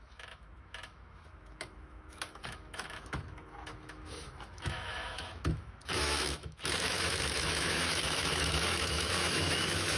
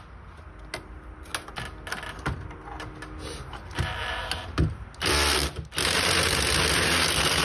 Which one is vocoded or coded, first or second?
first